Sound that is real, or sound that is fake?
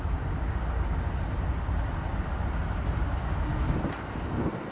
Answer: real